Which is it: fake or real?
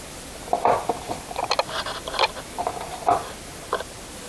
real